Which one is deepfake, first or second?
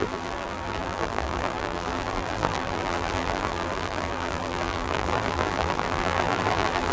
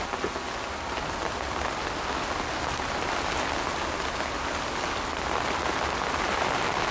first